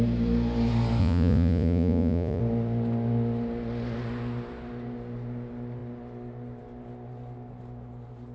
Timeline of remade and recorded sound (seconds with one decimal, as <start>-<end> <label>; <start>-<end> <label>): 0.0-1.0 recorded; 1.0-2.4 remade; 2.4-8.3 recorded